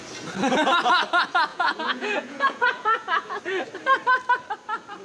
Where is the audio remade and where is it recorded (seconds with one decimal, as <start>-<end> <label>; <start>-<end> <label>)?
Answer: 0.0-1.5 recorded; 1.5-3.4 remade; 3.4-5.0 recorded